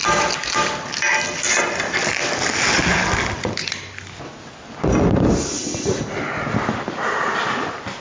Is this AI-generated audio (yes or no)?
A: no